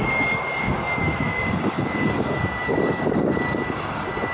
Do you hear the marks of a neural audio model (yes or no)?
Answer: yes